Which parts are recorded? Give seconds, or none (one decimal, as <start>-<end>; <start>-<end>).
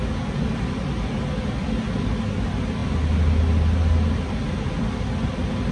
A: 0.0-5.7